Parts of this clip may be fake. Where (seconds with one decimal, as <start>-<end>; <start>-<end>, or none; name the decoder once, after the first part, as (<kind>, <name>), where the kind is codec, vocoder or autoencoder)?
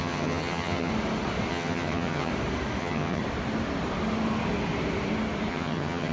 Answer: 0.0-0.9 (vocoder, HiFi-GAN); 1.5-2.3; 2.8-3.2; 5.5-6.1